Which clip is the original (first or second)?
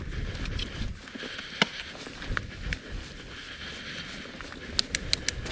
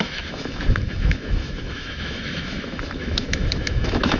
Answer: first